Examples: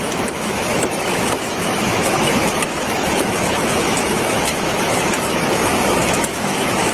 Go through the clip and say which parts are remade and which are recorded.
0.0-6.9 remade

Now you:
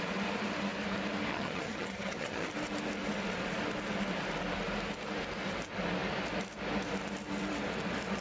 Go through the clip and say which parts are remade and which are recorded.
0.0-1.3 recorded; 1.3-2.5 remade; 2.5-8.2 recorded

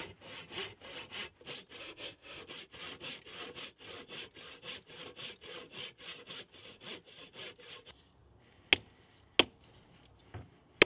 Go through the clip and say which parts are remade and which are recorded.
0.0-1.8 recorded; 1.8-2.4 remade; 2.4-10.9 recorded

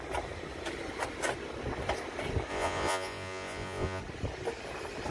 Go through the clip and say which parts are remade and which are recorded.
0.0-2.5 recorded; 2.5-4.0 remade; 4.0-5.1 recorded

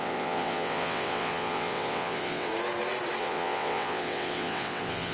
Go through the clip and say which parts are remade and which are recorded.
0.0-2.5 remade; 2.5-3.2 recorded; 3.2-5.1 remade

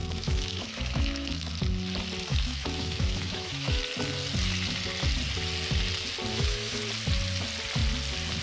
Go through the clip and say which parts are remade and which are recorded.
0.0-1.5 remade; 1.5-2.3 recorded; 2.3-3.8 remade; 3.8-6.3 recorded; 6.3-6.8 remade; 6.8-8.4 recorded

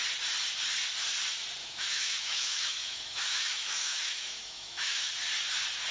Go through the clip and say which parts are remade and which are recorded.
0.0-1.6 recorded; 1.6-5.1 remade; 5.1-5.9 recorded